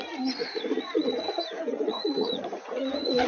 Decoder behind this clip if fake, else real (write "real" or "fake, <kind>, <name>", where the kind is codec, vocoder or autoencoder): fake, vocoder, Vocos